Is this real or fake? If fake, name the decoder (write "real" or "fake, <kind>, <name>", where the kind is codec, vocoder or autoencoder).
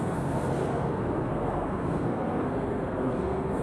fake, codec, SNAC